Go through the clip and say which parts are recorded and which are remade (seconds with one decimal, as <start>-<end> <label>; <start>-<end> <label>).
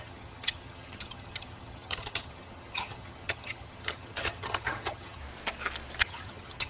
0.0-5.2 remade; 5.2-6.0 recorded; 6.0-6.7 remade